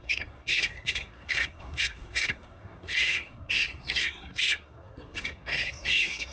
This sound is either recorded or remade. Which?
remade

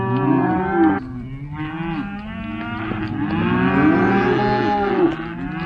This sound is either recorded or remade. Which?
recorded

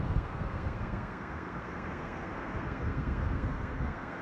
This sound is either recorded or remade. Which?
remade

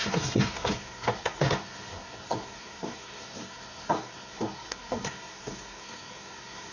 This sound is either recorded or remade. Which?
remade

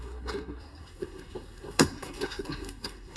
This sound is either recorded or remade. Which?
remade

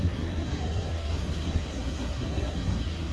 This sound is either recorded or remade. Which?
remade